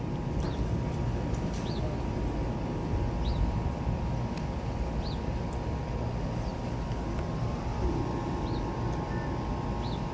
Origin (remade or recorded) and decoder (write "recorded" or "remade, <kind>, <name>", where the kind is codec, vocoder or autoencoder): recorded